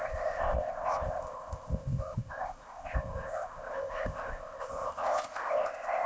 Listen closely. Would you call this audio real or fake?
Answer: fake